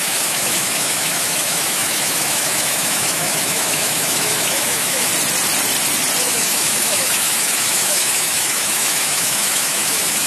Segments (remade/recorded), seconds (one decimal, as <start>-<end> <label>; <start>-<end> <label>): 0.0-5.1 remade; 5.1-6.2 recorded; 6.2-10.3 remade